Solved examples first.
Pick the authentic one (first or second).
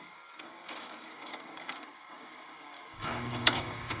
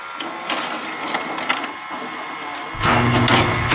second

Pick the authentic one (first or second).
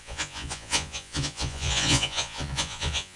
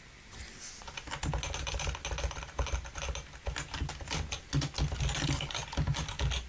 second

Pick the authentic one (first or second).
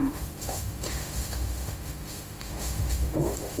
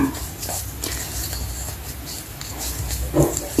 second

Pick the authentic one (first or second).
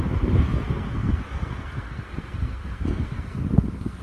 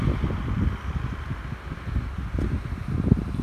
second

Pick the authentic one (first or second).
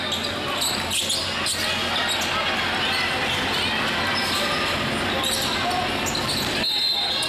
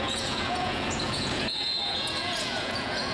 first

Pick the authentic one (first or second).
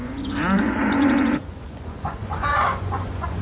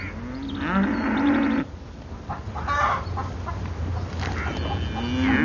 second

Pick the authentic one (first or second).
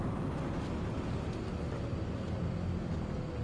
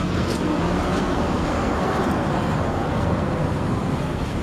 first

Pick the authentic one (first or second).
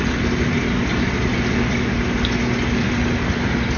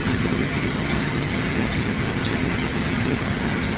first